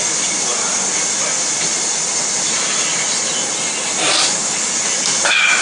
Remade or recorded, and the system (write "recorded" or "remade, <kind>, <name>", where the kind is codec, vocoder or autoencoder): recorded